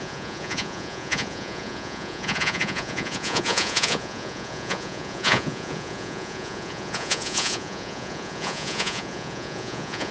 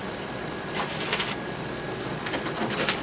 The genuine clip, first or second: second